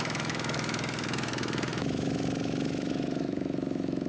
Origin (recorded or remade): remade